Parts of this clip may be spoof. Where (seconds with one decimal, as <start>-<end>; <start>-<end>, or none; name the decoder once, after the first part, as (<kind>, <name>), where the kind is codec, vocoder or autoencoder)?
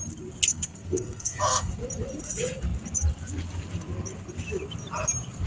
0.5-1.7 (codec, SNAC)